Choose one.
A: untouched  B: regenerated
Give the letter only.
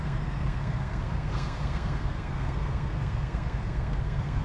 B